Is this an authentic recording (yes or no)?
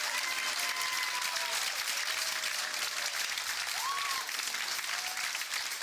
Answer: yes